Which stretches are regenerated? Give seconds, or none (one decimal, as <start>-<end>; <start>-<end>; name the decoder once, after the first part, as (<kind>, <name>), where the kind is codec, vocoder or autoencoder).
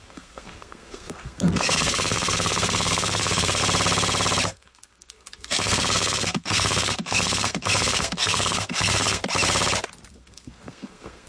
0.0-3.6 (codec, SNAC); 4.5-9.2; 10.1-11.3